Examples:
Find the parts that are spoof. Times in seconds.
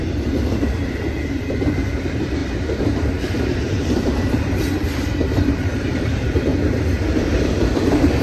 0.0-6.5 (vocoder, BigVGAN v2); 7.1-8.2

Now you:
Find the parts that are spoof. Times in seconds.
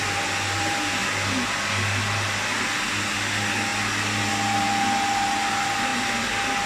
none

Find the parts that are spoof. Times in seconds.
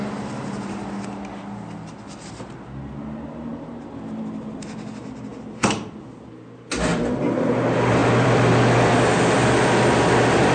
5.3-6.1 (vocoder, BigVGAN v2); 6.9-7.5; 8.0-9.2